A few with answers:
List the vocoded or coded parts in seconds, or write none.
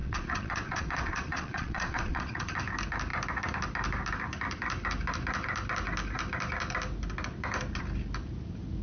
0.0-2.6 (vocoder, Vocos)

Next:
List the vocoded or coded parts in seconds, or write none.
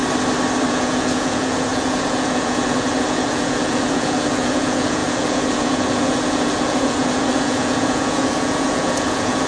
0.7-9.5 (vocoder, Vocos)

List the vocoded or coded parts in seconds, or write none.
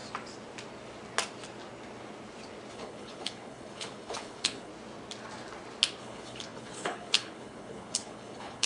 2.7-4.7 (codec, HILCodec); 6.0-8.7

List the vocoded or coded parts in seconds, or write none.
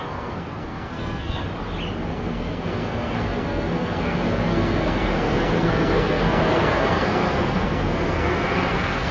0.0-1.5 (codec, SNAC); 2.1-9.1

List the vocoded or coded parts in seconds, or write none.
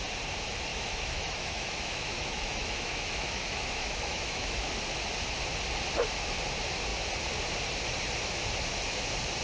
0.7-4.7 (autoencoder, DAC-VAE)